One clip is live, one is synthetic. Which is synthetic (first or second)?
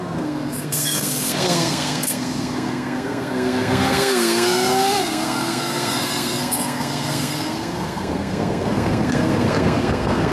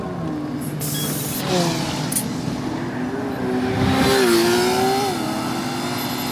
first